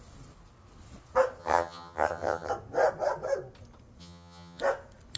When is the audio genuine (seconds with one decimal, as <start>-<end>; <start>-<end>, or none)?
0.0-1.4; 2.5-4.0; 4.6-5.2